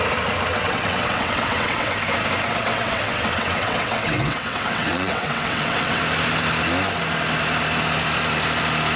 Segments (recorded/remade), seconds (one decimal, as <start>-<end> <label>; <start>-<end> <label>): 0.0-0.5 recorded; 0.5-1.9 remade; 1.9-2.5 recorded; 2.5-6.0 remade; 6.0-9.0 recorded